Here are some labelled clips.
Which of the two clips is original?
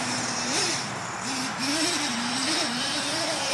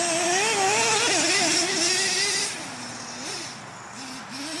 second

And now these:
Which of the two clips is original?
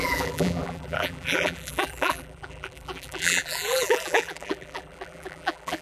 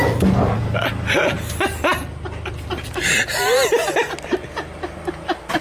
second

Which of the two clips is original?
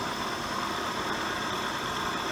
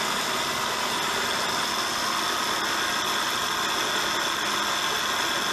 second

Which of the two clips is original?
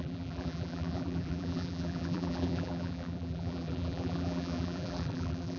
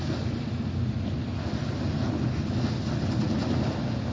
second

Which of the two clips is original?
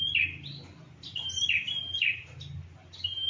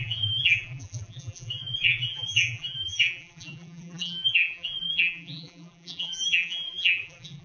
first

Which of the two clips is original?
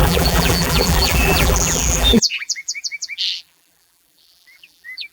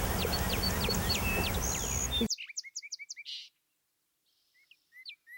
second